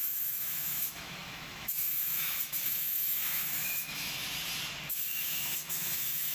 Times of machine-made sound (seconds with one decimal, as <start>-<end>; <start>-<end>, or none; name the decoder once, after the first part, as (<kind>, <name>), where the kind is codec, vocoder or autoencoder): 0.0-4.2 (autoencoder, DAC-VAE); 4.9-6.3